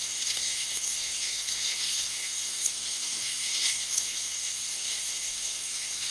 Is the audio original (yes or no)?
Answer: no